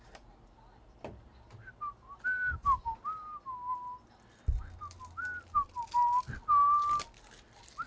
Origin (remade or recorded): recorded